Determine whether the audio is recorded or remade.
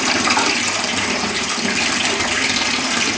recorded